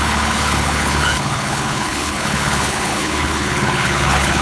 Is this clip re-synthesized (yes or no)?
yes